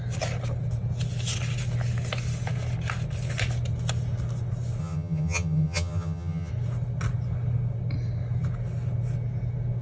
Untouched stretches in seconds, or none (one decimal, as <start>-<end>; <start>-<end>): 0.0-4.8; 6.5-9.8